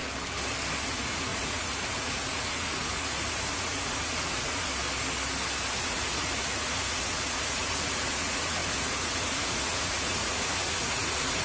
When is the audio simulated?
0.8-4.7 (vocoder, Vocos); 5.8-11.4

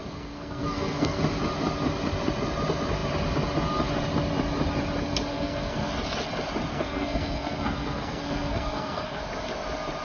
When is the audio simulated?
0.0-1.2 (codec, SNAC); 5.3-5.9; 6.7-9.2

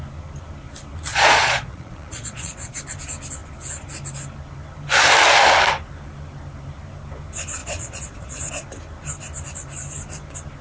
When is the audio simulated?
1.1-2.8 (vocoder, Vocos); 7.6-8.5

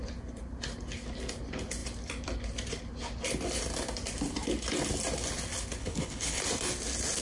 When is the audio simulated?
5.8-6.4 (codec, HILCodec)

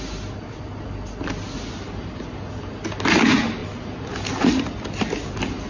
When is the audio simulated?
none

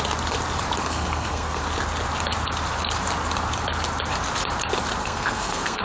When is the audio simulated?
0.8-1.6 (codec, SNAC); 5.0-5.8